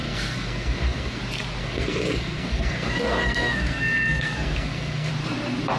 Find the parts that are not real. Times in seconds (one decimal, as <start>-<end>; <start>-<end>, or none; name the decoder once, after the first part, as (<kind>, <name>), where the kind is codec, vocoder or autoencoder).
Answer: 0.0-1.2 (codec, SNAC); 1.6-5.1